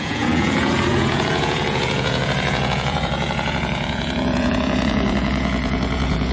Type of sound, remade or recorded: remade